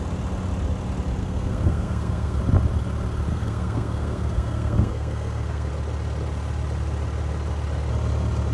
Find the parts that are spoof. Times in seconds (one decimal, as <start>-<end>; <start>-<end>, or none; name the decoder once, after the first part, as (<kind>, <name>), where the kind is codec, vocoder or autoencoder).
1.2-2.4 (codec, SNAC); 3.3-5.7